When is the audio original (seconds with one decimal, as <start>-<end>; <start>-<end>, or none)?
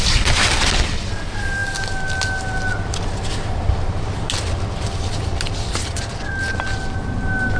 0.0-7.6